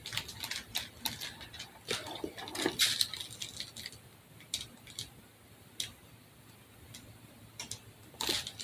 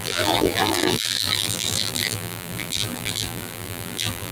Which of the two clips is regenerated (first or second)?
second